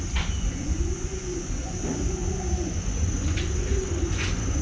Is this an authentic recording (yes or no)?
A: no